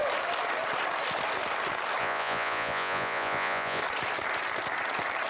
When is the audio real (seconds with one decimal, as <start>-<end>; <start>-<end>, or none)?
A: 0.0-2.0; 3.8-5.3